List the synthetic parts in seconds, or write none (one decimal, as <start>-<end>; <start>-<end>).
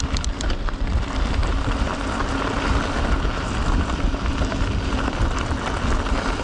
none